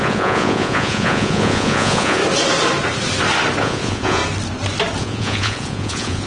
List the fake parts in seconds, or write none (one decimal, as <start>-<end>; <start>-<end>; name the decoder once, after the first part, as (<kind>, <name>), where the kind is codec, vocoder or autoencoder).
0.0-2.2 (vocoder, Vocos); 3.6-4.2; 5.0-6.3